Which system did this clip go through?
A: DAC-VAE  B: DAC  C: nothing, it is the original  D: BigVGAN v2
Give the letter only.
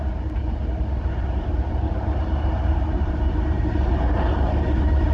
D